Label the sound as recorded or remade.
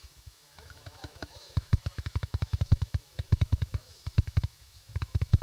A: remade